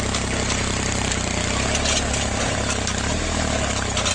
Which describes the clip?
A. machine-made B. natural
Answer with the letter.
B